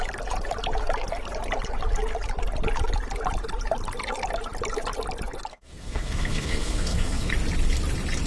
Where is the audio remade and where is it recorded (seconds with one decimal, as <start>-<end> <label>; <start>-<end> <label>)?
0.0-5.5 recorded; 5.5-7.3 remade; 7.3-8.3 recorded